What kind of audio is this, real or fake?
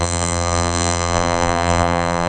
fake